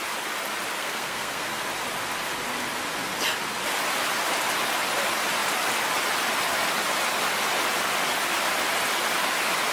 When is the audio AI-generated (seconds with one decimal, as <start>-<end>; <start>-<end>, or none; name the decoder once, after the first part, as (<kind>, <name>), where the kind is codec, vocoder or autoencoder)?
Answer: 0.8-1.6 (codec, SNAC)